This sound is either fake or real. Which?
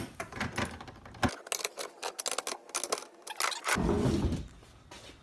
real